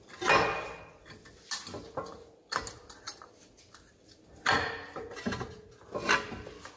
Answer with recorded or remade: recorded